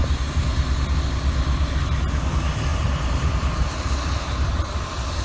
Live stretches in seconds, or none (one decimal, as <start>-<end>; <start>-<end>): 0.6-2.7; 4.5-5.2